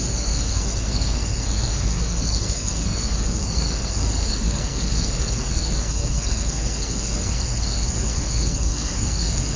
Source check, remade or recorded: remade